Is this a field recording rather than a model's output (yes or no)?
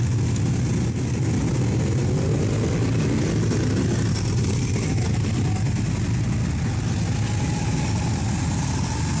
yes